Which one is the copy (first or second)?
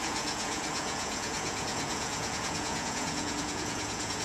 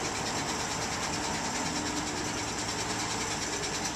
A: first